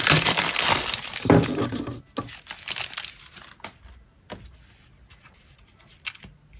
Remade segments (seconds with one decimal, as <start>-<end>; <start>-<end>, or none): none